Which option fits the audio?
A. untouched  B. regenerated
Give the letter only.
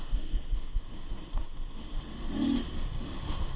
B